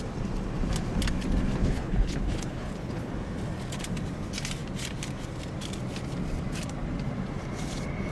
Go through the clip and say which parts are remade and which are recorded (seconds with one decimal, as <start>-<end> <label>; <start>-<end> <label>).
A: 0.0-1.6 recorded; 1.6-3.1 remade; 3.1-8.1 recorded